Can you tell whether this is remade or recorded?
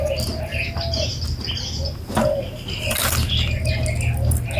recorded